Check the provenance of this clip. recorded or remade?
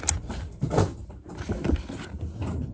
recorded